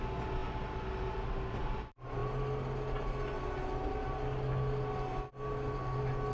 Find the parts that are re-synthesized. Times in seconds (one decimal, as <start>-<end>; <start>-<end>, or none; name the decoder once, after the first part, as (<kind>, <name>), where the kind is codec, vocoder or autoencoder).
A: none